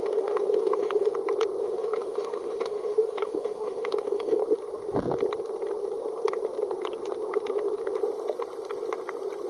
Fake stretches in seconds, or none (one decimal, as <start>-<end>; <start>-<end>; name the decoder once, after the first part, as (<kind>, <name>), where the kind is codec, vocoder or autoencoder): 0.0-1.1 (autoencoder, DAC-VAE); 1.6-4.4